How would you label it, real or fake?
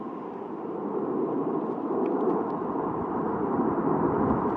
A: fake